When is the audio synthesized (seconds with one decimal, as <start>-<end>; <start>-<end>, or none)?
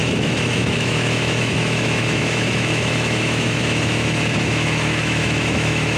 0.0-6.0